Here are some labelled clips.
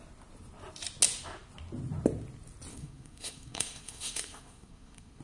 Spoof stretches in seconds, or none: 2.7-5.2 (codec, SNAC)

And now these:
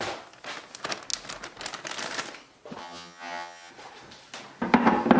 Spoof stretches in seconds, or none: 2.8-3.7 (vocoder, HiFi-GAN)

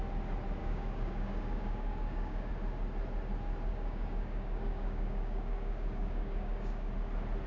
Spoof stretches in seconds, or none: 0.6-2.5 (codec, DAC); 3.7-6.9